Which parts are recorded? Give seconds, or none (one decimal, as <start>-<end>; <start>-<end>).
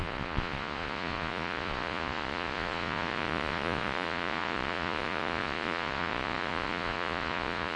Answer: none